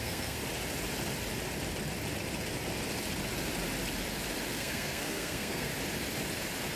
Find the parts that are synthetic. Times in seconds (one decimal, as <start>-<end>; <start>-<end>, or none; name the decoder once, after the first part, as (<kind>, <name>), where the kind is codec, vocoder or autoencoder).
0.0-0.4 (codec, SNAC); 4.5-5.7